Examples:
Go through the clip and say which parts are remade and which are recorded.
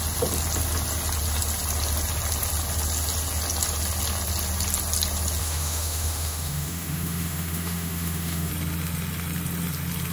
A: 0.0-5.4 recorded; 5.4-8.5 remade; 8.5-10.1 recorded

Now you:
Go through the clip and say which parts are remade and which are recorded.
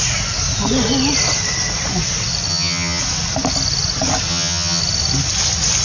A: 0.0-2.5 recorded; 2.5-3.0 remade; 3.0-4.3 recorded; 4.3-4.8 remade; 4.8-5.8 recorded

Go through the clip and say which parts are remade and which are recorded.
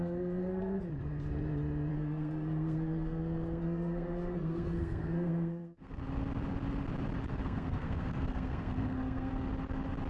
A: 0.0-0.9 remade; 0.9-1.9 recorded; 1.9-6.0 remade; 6.0-7.3 recorded; 7.3-9.3 remade; 9.3-10.1 recorded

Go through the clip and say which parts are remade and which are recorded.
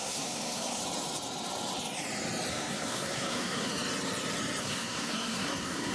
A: 0.0-0.8 remade; 0.8-2.5 recorded; 2.5-3.7 remade; 3.7-4.6 recorded; 4.6-5.9 remade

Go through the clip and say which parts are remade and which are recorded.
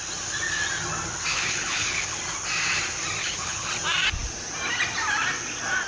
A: 0.0-1.3 recorded; 1.3-2.2 remade; 2.2-3.2 recorded; 3.2-3.7 remade; 3.7-5.9 recorded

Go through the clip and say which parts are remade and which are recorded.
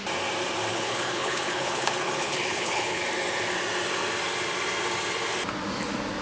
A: 0.0-0.7 recorded; 0.7-3.0 remade; 3.0-6.2 recorded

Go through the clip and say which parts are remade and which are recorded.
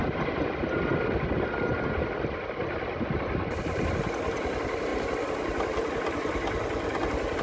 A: 0.0-7.4 recorded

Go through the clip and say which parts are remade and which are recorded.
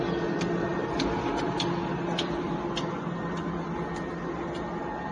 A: 0.0-5.1 recorded